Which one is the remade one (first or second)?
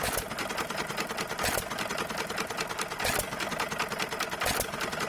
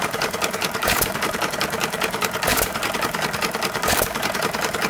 second